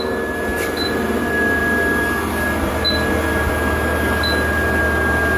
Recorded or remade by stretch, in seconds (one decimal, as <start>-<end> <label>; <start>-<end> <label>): 0.0-5.4 recorded